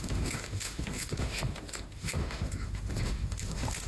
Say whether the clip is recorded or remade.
remade